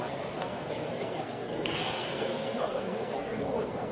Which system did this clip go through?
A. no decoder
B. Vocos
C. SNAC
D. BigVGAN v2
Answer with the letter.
C